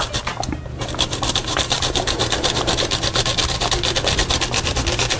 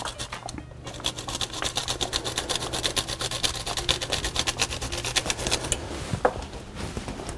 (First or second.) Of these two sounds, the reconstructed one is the first